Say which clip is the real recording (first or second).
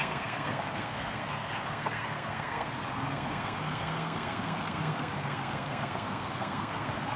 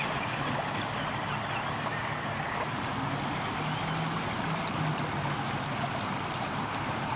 second